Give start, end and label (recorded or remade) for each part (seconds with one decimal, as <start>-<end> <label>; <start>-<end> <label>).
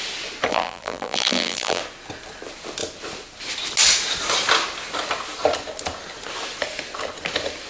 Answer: 0.0-0.5 recorded; 0.5-1.8 remade; 1.8-7.7 recorded